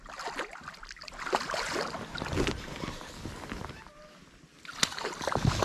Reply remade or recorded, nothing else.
recorded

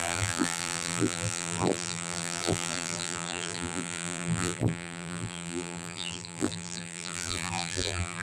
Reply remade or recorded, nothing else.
remade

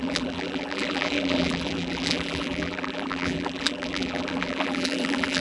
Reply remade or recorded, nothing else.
remade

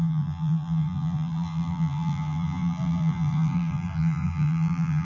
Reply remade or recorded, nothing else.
remade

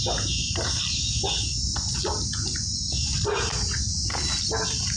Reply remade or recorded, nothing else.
recorded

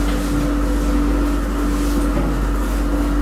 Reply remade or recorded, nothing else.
recorded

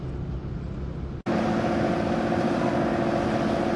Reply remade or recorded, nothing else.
recorded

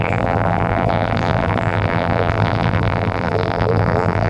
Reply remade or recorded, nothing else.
remade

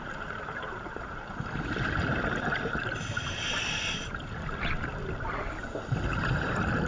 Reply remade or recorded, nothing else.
recorded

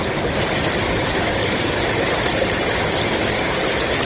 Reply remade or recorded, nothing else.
recorded